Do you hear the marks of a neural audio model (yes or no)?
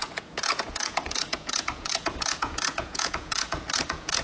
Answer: yes